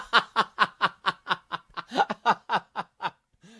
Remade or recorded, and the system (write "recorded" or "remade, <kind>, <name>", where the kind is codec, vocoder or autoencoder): recorded